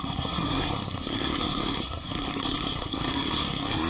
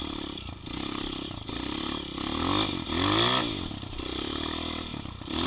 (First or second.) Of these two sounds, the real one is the second